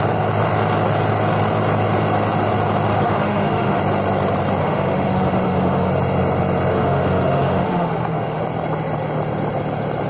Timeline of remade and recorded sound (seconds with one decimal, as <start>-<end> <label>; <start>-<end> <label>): 0.0-2.9 recorded; 2.9-3.8 remade; 3.8-4.6 recorded; 4.6-5.9 remade; 5.9-6.7 recorded; 6.7-8.4 remade; 8.4-10.1 recorded